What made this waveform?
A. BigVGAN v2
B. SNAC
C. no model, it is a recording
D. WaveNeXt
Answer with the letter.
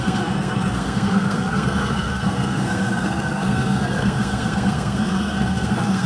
B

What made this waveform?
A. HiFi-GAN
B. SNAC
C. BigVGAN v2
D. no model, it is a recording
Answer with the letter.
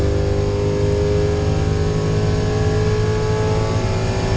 D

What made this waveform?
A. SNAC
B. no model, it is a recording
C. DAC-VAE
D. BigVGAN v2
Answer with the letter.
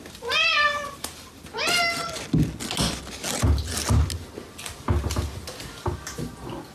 B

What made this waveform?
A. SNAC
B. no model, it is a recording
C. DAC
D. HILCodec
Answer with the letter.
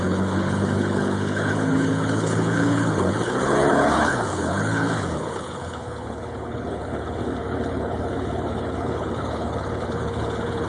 D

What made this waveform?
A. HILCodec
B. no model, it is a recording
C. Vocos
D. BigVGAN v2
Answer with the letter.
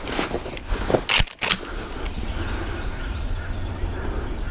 B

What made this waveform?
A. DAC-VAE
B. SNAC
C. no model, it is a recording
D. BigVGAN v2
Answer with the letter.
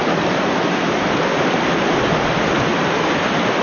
C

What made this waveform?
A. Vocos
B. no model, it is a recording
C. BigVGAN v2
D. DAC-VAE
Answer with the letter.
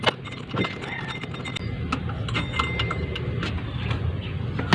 B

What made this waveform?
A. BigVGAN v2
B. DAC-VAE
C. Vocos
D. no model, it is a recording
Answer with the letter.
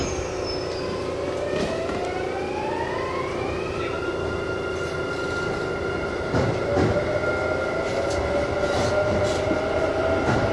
D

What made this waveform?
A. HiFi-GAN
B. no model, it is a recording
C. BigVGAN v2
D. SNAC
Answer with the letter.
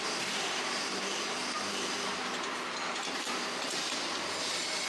C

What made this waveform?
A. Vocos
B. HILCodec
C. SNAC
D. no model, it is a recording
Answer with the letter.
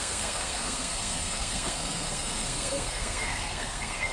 C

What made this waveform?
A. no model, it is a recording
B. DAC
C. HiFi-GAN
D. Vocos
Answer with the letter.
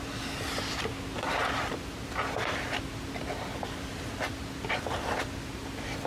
A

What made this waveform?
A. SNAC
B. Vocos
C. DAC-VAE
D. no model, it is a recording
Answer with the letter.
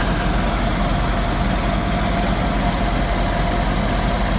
D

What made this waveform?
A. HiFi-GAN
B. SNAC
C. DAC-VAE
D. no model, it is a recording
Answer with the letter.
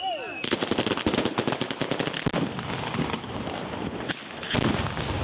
D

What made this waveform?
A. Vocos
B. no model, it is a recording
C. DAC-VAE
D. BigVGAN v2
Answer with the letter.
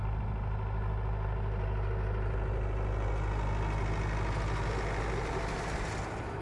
B